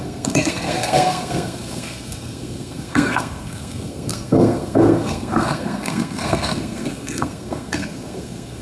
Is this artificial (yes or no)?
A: yes